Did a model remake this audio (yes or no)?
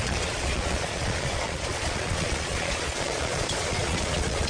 yes